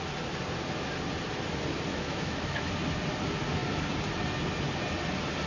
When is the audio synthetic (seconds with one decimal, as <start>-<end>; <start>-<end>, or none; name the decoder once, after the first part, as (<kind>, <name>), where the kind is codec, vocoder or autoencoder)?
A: 1.9-2.7 (autoencoder, DAC-VAE)